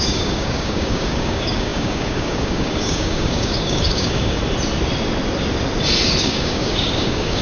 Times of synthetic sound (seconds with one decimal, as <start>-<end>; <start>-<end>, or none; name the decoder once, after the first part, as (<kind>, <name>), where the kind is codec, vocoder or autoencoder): 0.0-4.4 (codec, DAC); 6.2-7.4